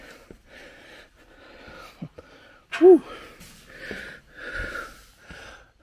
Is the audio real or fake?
real